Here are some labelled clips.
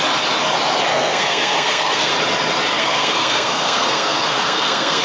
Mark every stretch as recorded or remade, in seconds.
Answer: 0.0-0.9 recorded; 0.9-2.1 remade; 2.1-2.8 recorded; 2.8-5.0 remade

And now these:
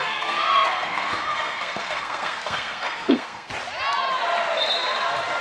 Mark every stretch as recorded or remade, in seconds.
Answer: 0.0-3.5 remade; 3.5-5.4 recorded

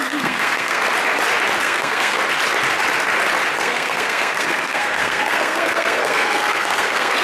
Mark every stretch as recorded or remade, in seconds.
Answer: 0.0-0.8 remade; 0.8-1.6 recorded; 1.6-2.2 remade; 2.2-3.6 recorded; 3.6-7.2 remade

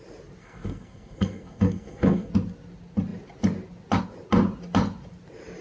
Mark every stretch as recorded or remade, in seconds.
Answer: 0.0-0.4 recorded; 0.4-2.3 remade; 2.3-5.6 recorded

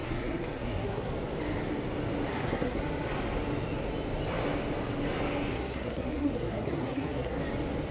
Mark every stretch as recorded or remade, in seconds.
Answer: 0.0-1.1 remade; 1.1-2.3 recorded; 2.3-2.8 remade; 2.8-5.5 recorded; 5.5-7.4 remade; 7.4-7.9 recorded

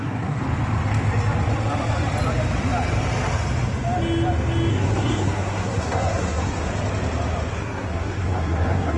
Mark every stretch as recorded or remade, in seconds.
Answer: 0.0-0.4 remade; 0.4-4.7 recorded; 4.7-6.7 remade; 6.7-7.5 recorded; 7.5-9.0 remade

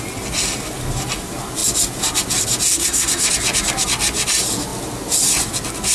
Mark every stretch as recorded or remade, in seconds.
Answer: 0.0-2.7 recorded; 2.7-3.3 remade; 3.3-5.9 recorded